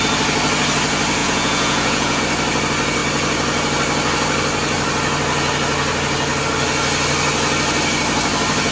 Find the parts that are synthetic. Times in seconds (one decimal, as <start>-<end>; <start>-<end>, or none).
1.2-2.2